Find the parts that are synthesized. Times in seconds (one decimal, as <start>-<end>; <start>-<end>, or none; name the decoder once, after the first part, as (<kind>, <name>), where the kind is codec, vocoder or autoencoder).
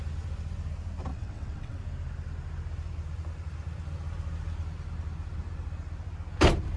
1.1-1.8 (vocoder, WaveNeXt)